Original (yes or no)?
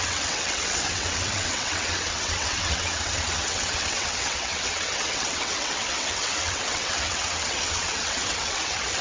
no